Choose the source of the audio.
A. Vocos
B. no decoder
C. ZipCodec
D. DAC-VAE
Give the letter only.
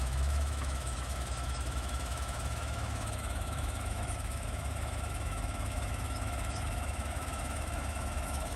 D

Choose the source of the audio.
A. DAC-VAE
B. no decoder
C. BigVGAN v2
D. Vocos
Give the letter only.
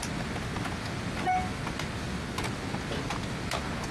B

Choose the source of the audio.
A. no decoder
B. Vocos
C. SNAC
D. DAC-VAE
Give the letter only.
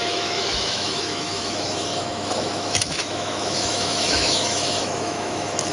D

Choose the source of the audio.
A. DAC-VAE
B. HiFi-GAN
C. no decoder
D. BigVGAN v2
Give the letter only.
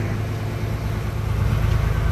C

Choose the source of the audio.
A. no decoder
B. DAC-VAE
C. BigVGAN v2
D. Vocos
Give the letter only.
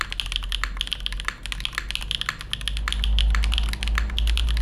A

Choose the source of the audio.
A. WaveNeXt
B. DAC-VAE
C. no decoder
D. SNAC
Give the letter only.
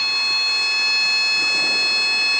C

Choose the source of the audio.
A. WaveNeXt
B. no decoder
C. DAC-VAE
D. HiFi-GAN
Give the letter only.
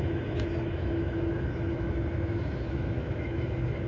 C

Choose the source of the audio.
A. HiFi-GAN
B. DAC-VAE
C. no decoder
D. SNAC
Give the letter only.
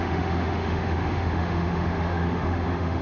B